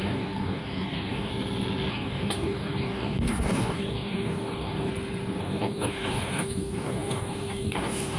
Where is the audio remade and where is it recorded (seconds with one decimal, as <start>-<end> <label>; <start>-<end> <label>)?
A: 0.0-1.3 remade; 1.3-1.9 recorded; 1.9-4.9 remade; 4.9-5.4 recorded; 5.4-8.2 remade